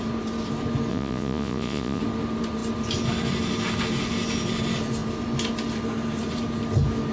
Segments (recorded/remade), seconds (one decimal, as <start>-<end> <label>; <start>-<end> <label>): 0.0-0.9 recorded; 0.9-2.0 remade; 2.0-7.1 recorded